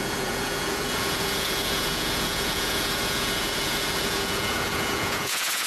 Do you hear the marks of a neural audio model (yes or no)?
yes